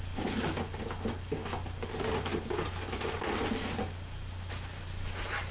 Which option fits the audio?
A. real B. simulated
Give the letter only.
A